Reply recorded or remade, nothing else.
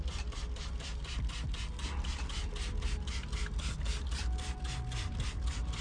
recorded